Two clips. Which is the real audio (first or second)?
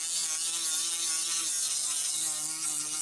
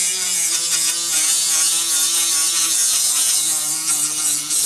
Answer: first